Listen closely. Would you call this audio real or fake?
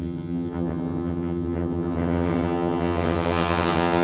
fake